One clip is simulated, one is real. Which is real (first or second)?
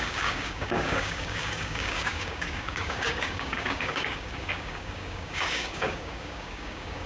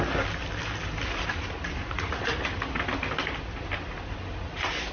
second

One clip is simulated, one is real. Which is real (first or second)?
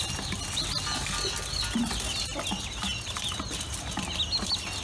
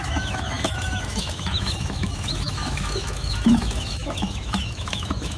first